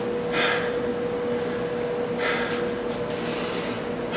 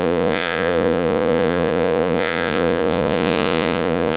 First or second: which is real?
first